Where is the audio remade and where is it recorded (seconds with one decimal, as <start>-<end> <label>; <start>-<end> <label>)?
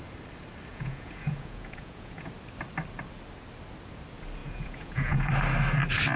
0.0-0.7 recorded; 0.7-2.3 remade; 2.3-4.4 recorded; 4.4-5.3 remade; 5.3-6.2 recorded